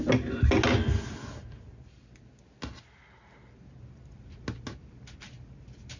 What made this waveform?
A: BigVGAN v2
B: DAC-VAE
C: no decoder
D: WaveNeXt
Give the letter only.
C